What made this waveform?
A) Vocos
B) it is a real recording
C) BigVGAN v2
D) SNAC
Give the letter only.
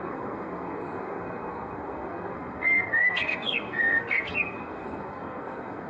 D